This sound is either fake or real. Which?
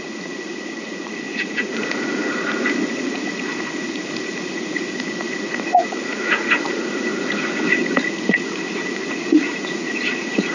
fake